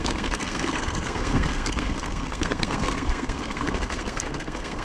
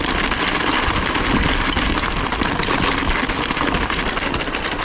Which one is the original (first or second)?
second